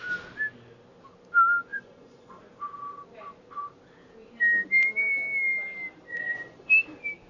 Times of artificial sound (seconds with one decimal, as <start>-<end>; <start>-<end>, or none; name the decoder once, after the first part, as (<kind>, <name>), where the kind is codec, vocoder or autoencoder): 1.7-2.4 (vocoder, Vocos); 6.1-6.7